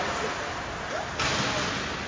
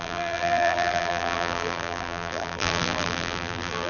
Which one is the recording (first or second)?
first